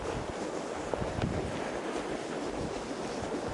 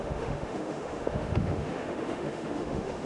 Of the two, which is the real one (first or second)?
first